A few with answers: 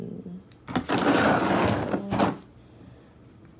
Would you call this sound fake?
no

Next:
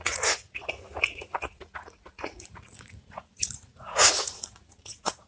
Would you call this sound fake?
yes